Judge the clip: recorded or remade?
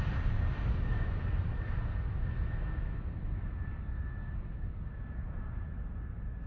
recorded